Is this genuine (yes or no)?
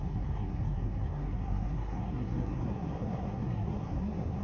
no